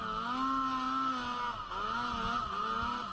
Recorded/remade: recorded